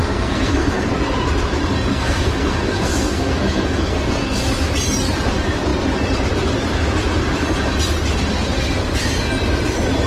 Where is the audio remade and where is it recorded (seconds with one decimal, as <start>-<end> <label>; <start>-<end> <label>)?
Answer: 0.0-0.9 remade; 0.9-1.9 recorded; 1.9-4.4 remade; 4.4-10.1 recorded